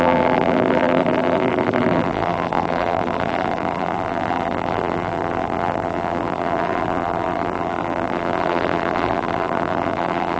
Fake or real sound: fake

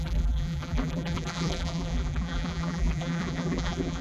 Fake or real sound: fake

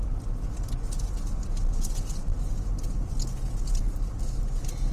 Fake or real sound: real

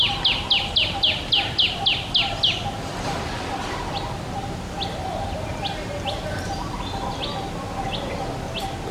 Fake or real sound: real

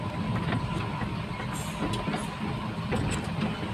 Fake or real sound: real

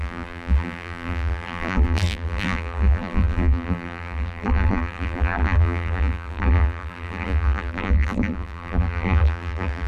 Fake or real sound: fake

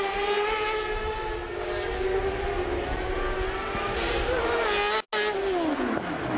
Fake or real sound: real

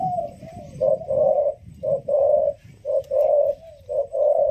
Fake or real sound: real